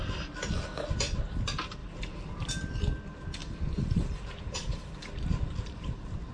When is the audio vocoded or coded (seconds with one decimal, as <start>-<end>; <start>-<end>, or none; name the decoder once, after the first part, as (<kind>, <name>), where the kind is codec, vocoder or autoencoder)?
1.8-2.5 (vocoder, BigVGAN v2); 3.4-6.3